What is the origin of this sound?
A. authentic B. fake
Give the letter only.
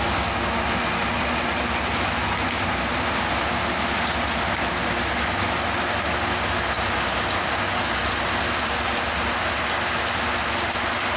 A